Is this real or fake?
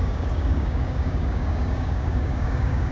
fake